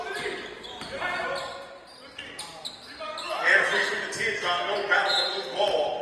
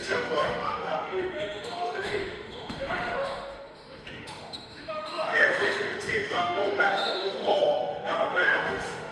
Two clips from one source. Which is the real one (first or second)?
first